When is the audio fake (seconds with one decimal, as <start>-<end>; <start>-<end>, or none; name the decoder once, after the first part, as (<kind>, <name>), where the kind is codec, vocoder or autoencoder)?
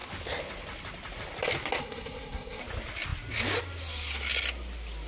1.8-2.6 (codec, SNAC)